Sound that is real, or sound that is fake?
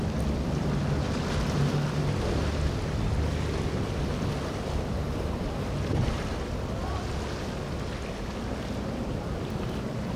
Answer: real